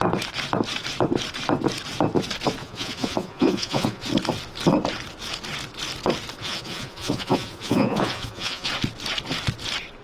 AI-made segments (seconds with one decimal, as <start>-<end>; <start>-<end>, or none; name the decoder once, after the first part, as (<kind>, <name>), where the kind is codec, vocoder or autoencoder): 2.6-4.1 (vocoder, Vocos); 6.4-8.7